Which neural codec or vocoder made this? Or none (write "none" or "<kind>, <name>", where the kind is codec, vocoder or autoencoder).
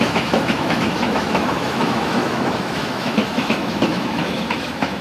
autoencoder, DAC-VAE